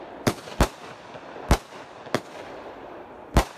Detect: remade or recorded recorded